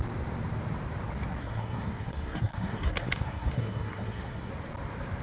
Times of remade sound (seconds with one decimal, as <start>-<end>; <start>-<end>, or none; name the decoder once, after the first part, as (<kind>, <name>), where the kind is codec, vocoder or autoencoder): 1.4-4.5 (codec, SNAC)